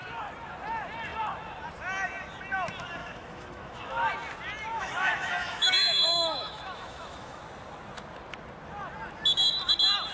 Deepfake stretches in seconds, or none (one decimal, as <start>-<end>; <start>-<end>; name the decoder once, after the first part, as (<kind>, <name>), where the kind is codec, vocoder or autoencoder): 3.0-4.1 (autoencoder, DAC-VAE); 4.7-7.4